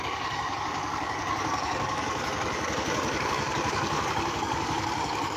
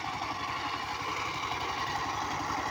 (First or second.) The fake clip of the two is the first